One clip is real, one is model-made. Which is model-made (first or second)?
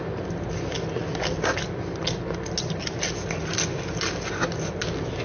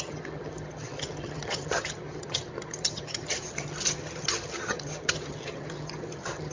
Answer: second